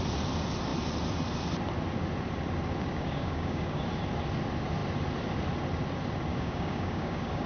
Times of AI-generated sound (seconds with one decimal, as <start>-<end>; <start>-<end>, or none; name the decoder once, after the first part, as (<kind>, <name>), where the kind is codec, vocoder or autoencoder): 2.8-3.8 (codec, DAC); 6.3-7.5